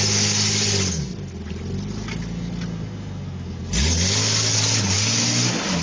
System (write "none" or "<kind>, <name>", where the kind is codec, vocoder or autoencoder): none